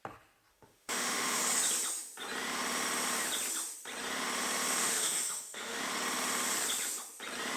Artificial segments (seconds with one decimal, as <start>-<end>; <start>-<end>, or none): 0.5-1.4; 4.8-5.8